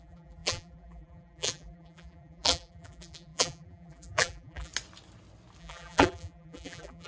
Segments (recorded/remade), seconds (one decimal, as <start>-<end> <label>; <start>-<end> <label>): 0.0-4.7 remade; 4.7-5.6 recorded; 5.6-7.1 remade